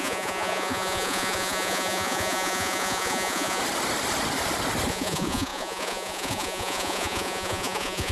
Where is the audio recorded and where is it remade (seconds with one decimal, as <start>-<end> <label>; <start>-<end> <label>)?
0.0-3.6 remade; 3.6-4.9 recorded; 4.9-8.1 remade

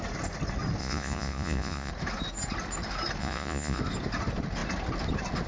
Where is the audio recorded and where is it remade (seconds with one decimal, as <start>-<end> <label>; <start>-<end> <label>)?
0.0-0.8 recorded; 0.8-1.9 remade; 1.9-3.2 recorded; 3.2-3.8 remade; 3.8-5.5 recorded

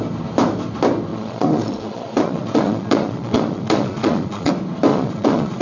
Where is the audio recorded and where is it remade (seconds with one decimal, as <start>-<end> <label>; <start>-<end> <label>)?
0.0-1.1 recorded; 1.1-4.5 remade; 4.5-4.9 recorded; 4.9-5.6 remade